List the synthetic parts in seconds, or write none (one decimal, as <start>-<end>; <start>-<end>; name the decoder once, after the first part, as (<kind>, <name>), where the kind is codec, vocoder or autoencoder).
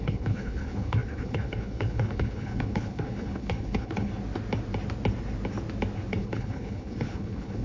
0.0-4.1 (codec, HILCodec); 6.1-7.6